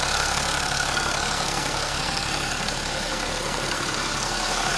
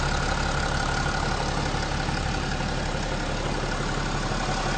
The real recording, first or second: second